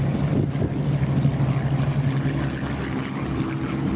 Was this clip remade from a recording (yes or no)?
no